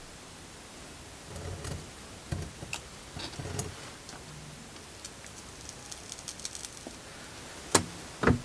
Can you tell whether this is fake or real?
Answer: real